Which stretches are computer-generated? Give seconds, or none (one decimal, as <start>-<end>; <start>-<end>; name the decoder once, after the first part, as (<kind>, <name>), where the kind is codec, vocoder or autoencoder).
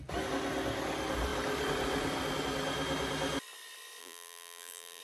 4.0-5.0 (vocoder, BigVGAN v2)